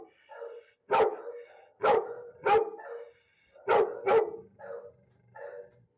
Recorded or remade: recorded